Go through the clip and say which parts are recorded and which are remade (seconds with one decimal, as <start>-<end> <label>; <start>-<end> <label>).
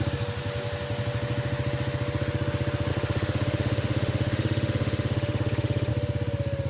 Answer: 0.0-2.9 recorded; 2.9-5.9 remade; 5.9-6.7 recorded